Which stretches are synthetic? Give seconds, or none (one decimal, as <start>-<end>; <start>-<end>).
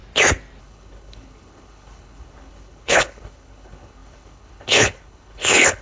0.6-5.8